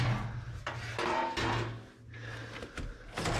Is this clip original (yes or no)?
yes